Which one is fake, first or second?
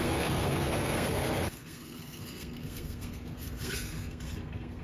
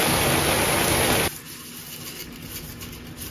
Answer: first